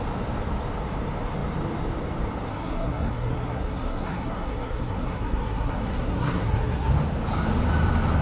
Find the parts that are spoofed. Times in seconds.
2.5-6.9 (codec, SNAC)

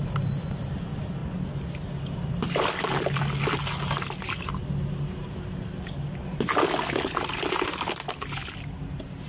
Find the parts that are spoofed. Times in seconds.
none

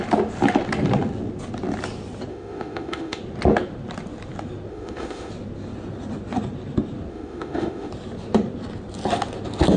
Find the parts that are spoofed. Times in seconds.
2.3-3.2 (autoencoder, DAC-VAE); 4.7-5.3; 7.1-7.9